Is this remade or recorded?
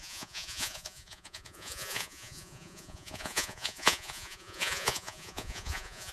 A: remade